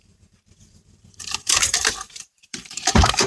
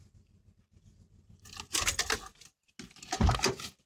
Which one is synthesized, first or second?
first